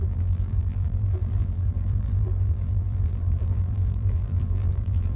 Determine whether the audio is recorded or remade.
remade